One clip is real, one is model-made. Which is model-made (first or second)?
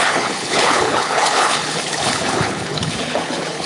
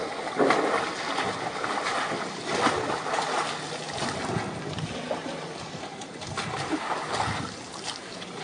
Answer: first